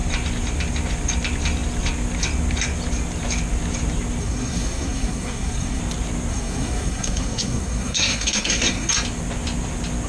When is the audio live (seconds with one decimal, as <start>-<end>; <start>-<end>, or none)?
0.0-4.2; 5.8-6.3; 8.9-10.1